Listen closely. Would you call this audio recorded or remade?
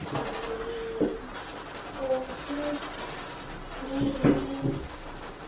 recorded